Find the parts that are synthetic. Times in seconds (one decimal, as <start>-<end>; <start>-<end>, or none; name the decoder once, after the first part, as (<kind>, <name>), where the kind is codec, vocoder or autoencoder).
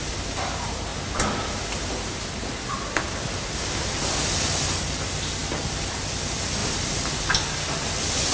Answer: none